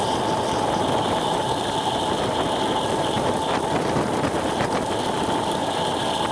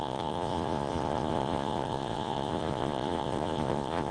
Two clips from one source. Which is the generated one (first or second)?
second